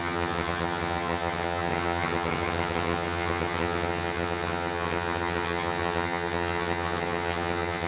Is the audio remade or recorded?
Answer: remade